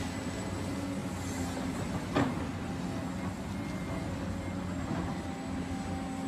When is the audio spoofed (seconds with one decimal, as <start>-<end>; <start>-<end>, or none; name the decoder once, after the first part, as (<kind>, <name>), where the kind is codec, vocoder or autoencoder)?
none